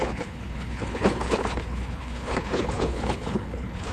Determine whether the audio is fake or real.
fake